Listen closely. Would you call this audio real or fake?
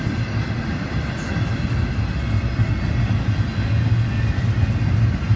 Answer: real